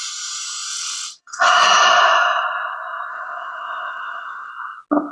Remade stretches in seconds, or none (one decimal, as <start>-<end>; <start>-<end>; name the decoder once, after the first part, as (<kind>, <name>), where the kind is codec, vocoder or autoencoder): 0.7-1.5 (vocoder, WaveNeXt); 3.1-4.5